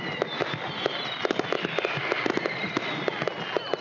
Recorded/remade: recorded